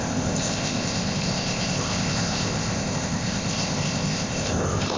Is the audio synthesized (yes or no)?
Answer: yes